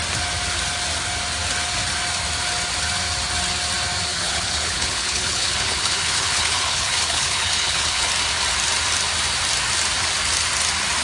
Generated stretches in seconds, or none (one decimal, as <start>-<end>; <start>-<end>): 4.1-8.1